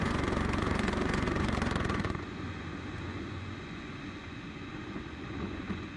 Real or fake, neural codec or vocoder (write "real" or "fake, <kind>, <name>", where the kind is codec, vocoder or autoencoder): fake, vocoder, Vocos